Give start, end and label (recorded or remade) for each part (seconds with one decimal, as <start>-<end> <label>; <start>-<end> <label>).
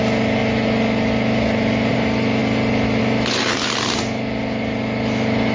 0.0-5.5 recorded